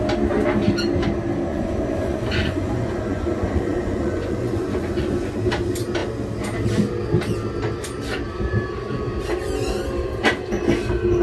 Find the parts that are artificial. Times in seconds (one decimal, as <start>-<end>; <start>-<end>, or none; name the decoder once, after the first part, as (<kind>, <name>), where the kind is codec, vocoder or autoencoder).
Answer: 1.5-5.5 (vocoder, Vocos)